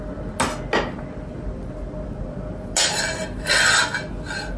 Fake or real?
real